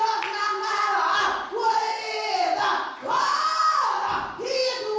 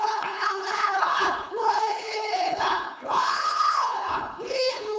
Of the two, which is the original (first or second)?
first